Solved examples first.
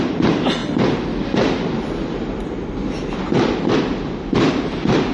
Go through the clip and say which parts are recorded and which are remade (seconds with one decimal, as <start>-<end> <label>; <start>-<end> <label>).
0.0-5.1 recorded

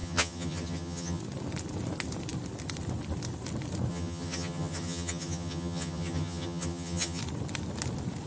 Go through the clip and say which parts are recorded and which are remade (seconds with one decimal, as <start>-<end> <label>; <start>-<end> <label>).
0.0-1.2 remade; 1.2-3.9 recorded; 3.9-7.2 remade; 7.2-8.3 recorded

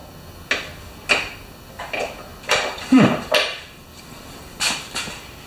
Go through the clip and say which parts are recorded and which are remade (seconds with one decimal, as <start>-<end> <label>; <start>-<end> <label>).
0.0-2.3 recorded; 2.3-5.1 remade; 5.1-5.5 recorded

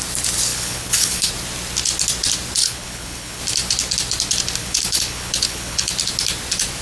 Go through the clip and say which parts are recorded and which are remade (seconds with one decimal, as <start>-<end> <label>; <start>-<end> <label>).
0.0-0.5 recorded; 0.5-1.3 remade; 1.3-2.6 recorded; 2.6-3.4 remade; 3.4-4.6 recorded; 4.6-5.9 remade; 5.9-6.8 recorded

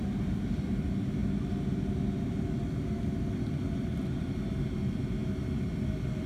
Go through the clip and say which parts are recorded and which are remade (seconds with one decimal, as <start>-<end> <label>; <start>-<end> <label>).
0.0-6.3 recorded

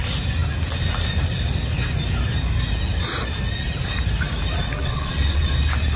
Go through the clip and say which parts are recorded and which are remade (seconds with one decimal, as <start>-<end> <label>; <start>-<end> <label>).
0.0-4.8 recorded; 4.8-5.4 remade; 5.4-6.0 recorded

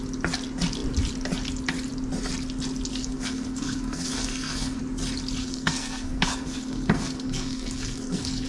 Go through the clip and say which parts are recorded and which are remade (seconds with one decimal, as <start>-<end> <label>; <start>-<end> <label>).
0.0-2.9 recorded; 2.9-4.8 remade; 4.8-5.4 recorded; 5.4-8.5 remade